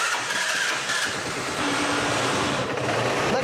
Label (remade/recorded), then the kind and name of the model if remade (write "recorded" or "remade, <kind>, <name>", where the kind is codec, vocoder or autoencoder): remade, vocoder, BigVGAN v2